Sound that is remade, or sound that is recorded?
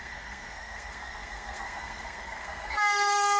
remade